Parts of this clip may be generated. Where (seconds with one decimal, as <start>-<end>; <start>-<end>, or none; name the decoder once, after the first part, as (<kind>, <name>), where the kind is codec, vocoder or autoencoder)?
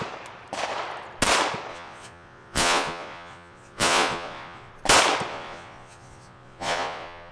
1.7-4.7 (vocoder, Vocos); 5.3-7.3